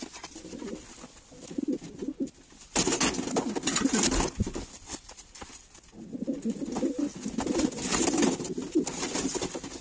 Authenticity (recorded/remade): recorded